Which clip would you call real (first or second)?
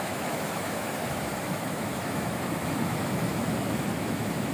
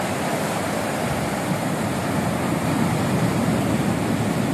second